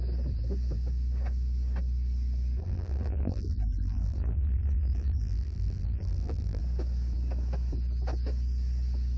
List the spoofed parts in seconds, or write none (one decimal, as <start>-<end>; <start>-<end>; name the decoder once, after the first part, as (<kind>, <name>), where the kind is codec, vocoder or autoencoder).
2.6-6.6 (vocoder, BigVGAN v2)